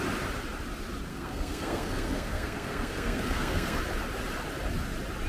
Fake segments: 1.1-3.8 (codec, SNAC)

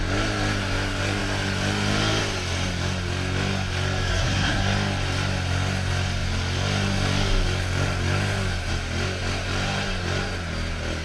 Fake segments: 4.1-4.6 (codec, SNAC)

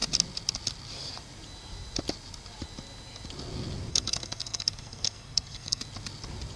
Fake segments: 3.9-5.8 (codec, SNAC)

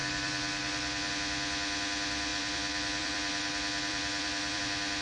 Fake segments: 0.0-1.1 (vocoder, BigVGAN v2); 2.3-4.6